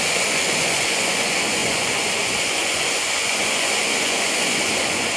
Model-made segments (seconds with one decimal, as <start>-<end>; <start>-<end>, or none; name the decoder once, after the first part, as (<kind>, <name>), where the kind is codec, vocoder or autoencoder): 0.0-5.2 (vocoder, Vocos)